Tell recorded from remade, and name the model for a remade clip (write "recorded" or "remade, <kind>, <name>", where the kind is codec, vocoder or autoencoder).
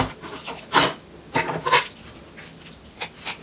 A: recorded